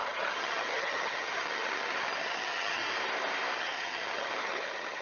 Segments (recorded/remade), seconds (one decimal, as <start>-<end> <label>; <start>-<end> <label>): 0.0-2.8 remade; 2.8-3.6 recorded; 3.6-5.0 remade